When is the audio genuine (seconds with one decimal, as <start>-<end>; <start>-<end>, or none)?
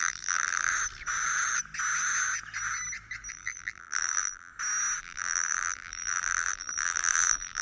0.7-3.3; 4.5-5.0